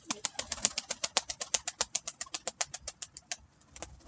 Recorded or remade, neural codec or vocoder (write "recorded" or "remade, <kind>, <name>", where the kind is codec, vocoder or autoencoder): recorded